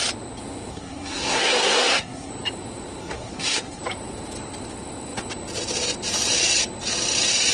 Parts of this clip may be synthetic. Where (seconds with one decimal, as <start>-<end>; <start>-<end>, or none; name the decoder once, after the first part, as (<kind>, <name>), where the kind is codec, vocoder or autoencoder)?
0.7-2.3 (codec, SNAC); 3.0-3.8